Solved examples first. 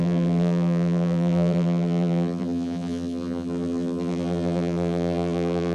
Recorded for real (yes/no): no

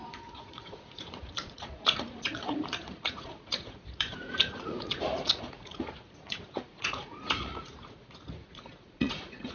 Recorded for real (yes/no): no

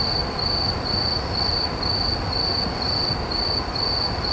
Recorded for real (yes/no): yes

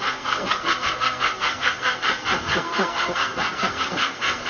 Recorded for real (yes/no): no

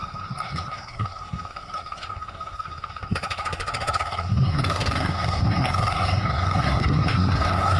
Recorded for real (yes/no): no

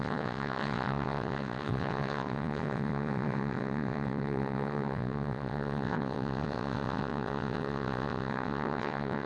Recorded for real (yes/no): no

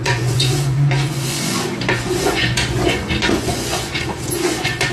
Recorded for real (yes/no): no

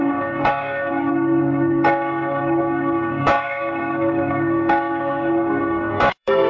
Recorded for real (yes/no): no